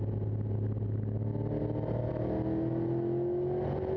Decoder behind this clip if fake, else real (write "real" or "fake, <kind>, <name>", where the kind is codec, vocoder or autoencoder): real